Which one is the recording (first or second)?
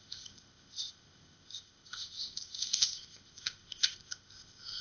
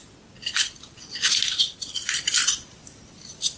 second